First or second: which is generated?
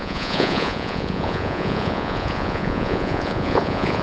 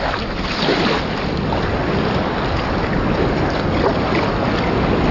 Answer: first